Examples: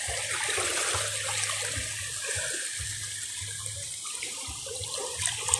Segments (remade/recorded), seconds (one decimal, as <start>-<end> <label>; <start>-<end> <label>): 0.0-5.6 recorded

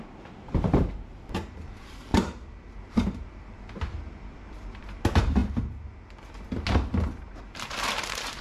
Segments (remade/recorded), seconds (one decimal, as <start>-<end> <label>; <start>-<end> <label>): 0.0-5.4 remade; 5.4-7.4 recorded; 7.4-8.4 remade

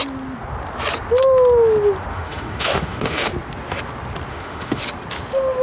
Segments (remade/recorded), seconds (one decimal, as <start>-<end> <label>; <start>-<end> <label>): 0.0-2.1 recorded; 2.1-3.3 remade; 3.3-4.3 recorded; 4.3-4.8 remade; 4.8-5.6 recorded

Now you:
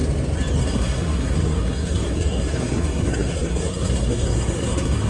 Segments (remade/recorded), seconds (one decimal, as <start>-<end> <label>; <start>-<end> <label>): 0.0-0.6 recorded; 0.6-5.1 remade

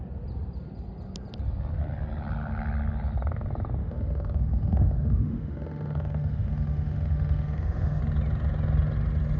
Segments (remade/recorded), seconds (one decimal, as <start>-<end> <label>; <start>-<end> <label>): 0.0-3.8 recorded; 3.8-8.0 remade; 8.0-9.4 recorded

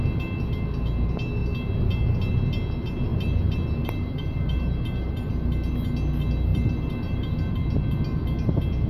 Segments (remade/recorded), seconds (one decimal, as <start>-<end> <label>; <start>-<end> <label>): 0.0-3.1 recorded; 3.1-5.7 remade; 5.7-6.5 recorded; 6.5-7.5 remade; 7.5-8.9 recorded

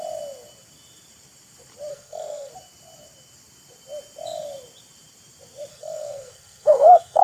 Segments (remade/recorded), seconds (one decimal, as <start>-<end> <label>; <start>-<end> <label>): 0.0-1.9 recorded; 1.9-2.5 remade; 2.5-5.7 recorded; 5.7-7.2 remade

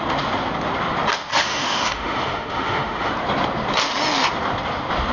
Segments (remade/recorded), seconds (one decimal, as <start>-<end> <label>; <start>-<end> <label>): 0.0-1.3 recorded; 1.3-3.1 remade; 3.1-5.1 recorded